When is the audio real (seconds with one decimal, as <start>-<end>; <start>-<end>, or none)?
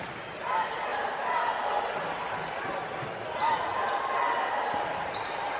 0.0-0.9; 1.5-3.7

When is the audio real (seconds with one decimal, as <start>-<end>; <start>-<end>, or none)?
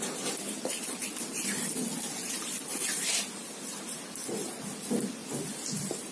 0.0-6.1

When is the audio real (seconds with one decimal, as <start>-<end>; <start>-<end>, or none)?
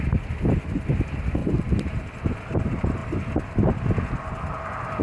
0.0-1.4; 2.4-5.0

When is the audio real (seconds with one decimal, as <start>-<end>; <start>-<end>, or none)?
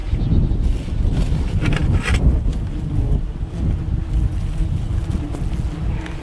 0.5-6.2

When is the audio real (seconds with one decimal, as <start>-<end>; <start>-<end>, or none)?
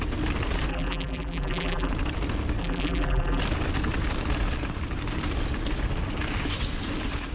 0.0-0.7; 1.9-2.6; 3.4-7.3